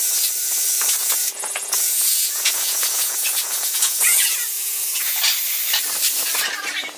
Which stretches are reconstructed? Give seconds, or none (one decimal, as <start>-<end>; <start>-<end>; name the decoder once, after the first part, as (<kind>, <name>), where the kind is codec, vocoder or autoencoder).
1.0-5.2 (vocoder, Vocos)